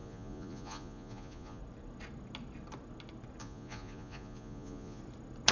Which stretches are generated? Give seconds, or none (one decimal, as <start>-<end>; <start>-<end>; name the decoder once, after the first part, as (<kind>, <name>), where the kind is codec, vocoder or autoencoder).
0.0-1.6 (vocoder, Vocos); 3.4-5.0